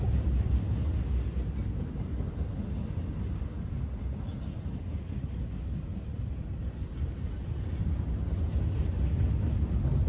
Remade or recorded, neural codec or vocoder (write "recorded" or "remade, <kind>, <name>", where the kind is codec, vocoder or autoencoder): recorded